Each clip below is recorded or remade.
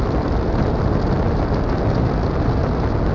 recorded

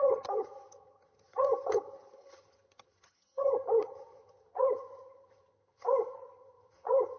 remade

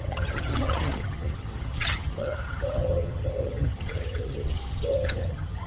remade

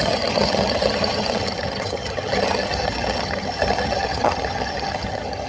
remade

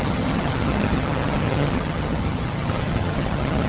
remade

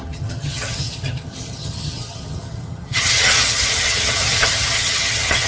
remade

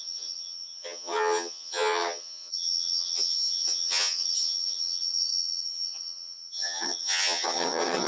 remade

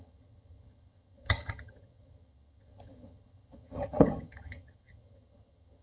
remade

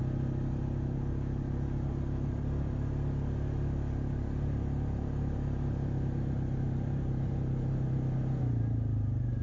recorded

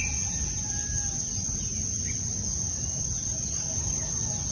recorded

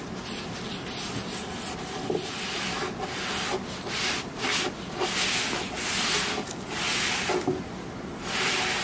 recorded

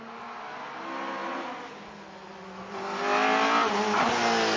recorded